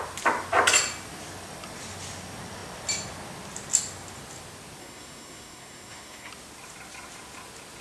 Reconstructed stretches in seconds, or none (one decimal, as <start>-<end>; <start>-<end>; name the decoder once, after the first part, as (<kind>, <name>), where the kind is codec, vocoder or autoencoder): 4.8-6.3 (codec, SNAC)